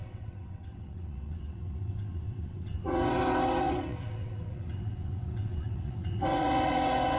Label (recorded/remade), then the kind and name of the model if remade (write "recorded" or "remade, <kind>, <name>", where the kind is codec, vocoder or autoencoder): remade, vocoder, WaveNeXt